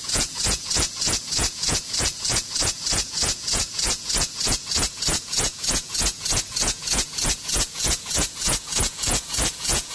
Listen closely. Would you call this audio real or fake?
fake